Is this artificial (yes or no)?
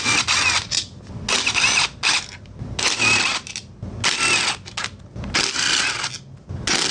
no